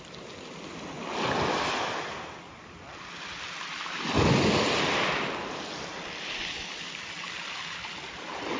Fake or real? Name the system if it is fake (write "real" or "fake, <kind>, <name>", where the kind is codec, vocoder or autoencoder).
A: real